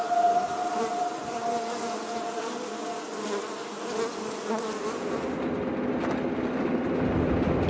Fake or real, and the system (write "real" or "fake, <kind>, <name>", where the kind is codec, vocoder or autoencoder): real